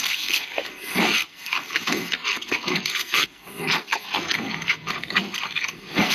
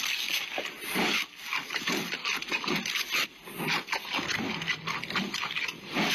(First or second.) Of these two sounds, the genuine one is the second